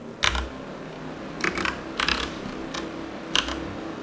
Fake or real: real